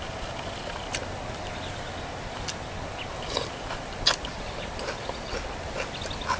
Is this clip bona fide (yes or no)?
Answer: yes